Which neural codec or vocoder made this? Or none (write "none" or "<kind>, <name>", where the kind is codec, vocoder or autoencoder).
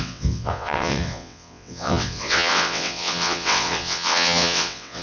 vocoder, WaveNeXt